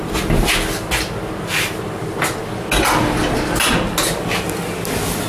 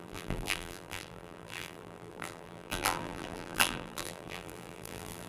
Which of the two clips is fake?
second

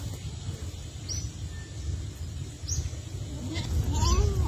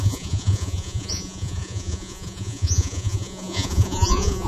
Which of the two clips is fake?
second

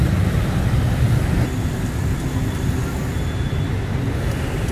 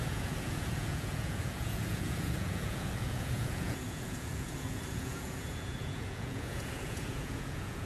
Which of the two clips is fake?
second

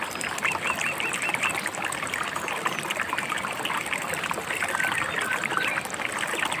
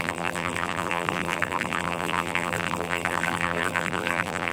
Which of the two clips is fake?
second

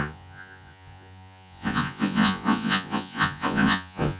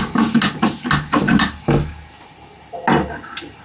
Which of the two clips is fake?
first